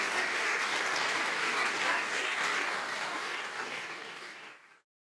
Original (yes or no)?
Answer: no